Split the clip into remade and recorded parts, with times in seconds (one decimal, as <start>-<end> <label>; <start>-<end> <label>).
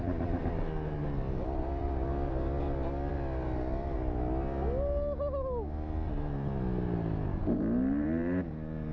0.0-7.4 recorded; 7.4-8.5 remade; 8.5-8.9 recorded